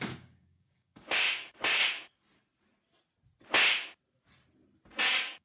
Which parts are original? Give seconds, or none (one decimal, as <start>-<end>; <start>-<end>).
1.8-5.0